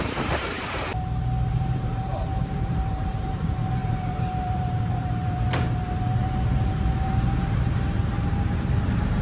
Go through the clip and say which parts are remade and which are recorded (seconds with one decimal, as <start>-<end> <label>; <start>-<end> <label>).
0.0-0.9 remade; 0.9-1.5 recorded; 1.5-9.2 remade